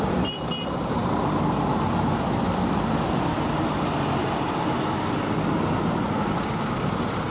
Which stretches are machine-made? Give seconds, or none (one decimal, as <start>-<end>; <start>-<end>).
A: none